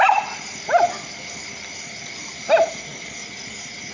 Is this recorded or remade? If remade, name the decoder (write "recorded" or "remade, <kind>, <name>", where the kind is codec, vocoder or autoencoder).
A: recorded